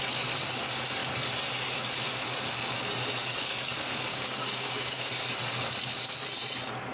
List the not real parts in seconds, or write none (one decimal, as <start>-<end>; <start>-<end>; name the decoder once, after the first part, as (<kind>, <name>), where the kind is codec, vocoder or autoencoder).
4.1-5.1 (codec, DAC)